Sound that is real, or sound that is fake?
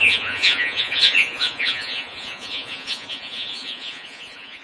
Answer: fake